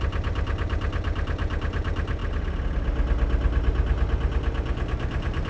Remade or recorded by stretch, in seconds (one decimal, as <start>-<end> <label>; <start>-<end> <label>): 0.0-5.5 recorded